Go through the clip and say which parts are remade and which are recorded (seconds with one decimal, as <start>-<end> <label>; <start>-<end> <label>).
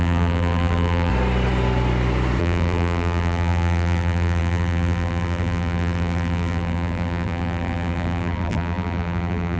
0.0-1.1 remade; 1.1-2.4 recorded; 2.4-9.6 remade